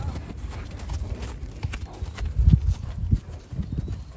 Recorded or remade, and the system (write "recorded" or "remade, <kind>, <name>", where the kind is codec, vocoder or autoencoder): recorded